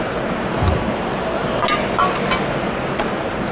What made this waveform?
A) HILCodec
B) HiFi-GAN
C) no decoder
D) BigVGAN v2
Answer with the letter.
C